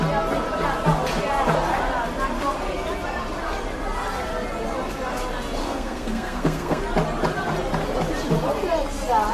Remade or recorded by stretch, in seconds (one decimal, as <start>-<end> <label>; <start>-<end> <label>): 0.0-5.6 recorded; 5.6-6.8 remade; 6.8-9.3 recorded